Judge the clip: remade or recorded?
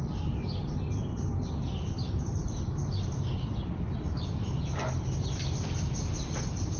recorded